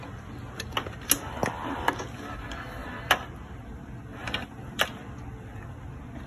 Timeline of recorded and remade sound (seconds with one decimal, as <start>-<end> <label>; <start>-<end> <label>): 0.0-6.3 recorded